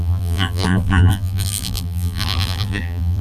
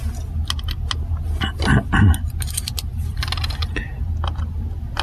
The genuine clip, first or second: second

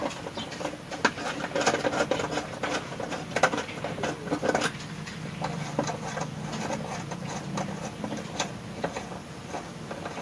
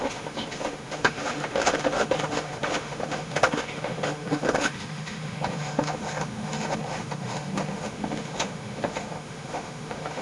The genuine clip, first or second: first